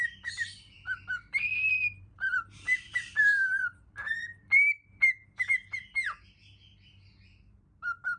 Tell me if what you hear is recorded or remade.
remade